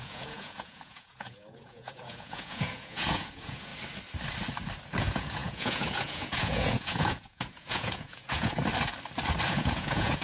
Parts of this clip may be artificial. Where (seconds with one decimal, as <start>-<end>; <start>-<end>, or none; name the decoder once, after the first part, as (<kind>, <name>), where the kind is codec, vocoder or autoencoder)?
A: 0.0-3.7 (vocoder, Vocos); 5.0-8.6; 9.5-10.2